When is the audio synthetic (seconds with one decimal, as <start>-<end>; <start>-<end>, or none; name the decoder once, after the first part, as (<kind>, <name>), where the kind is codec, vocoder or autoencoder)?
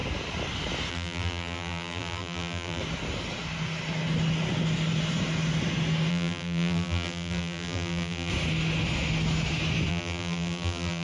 0.9-2.8 (vocoder, BigVGAN v2); 6.1-8.3; 9.9-11.0